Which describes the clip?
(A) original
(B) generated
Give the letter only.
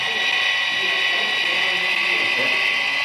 A